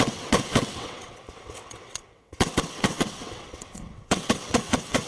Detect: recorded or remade remade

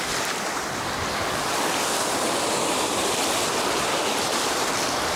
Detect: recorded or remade recorded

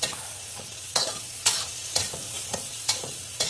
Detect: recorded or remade remade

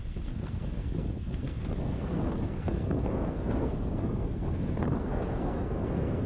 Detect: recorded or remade remade